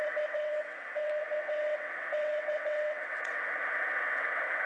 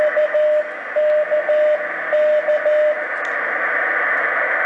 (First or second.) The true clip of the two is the second